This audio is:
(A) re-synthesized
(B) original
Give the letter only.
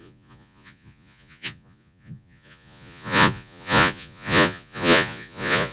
A